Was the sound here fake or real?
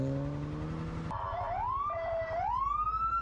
real